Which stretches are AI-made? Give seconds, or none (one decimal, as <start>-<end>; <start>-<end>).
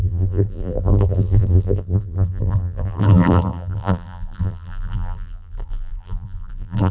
0.0-6.9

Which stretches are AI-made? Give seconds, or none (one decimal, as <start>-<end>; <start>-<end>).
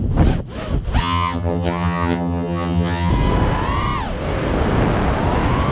1.0-3.1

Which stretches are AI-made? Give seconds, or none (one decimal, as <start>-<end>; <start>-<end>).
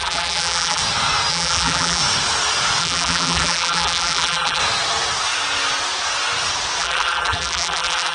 0.0-0.8; 1.3-2.0; 2.8-4.6; 6.8-8.1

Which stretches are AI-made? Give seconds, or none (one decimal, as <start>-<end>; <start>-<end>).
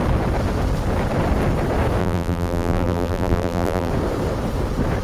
2.0-3.9